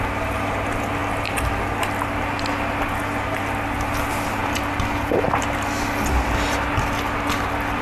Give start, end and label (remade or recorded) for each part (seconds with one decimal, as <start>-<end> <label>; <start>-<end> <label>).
0.0-7.8 recorded